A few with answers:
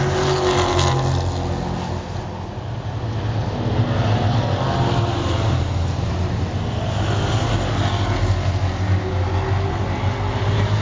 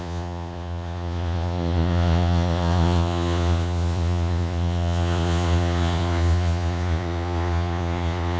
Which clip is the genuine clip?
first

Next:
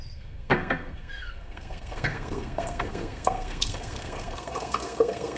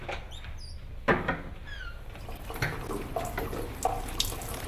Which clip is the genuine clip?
second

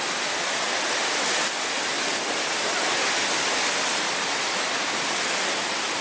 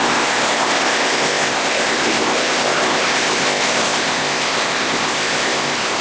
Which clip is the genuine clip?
first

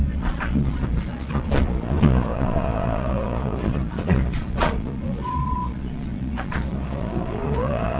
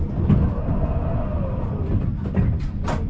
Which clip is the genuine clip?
second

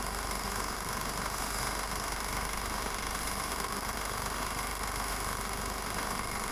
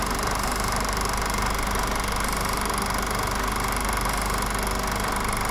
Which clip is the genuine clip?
second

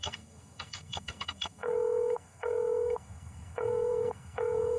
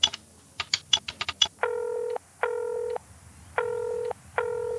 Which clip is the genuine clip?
second